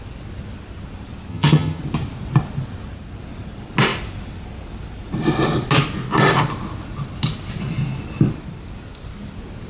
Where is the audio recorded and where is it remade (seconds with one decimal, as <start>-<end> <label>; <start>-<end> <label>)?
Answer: 0.0-1.3 recorded; 1.3-1.8 remade; 1.8-9.7 recorded